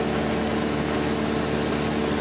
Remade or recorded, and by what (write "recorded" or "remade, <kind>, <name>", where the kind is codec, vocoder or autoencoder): recorded